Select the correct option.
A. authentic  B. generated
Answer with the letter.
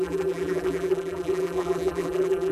B